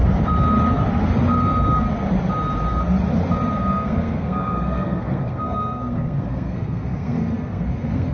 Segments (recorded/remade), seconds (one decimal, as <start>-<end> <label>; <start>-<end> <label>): 0.0-3.6 recorded; 3.6-8.1 remade